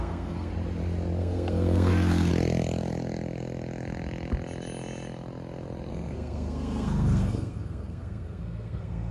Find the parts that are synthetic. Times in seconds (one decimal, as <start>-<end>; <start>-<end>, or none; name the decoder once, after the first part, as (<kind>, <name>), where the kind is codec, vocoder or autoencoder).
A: 0.0-0.5 (codec, SNAC); 1.2-2.3; 5.9-9.1